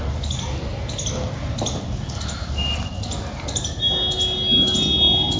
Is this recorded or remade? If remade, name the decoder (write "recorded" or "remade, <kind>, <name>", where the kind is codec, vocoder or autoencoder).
recorded